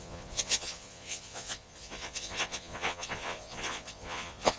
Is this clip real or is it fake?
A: fake